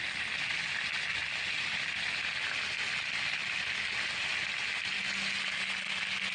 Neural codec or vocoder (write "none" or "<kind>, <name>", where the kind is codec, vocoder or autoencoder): none